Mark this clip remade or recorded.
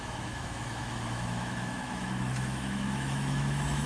remade